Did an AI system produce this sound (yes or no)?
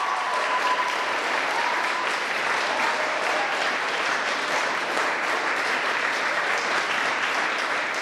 yes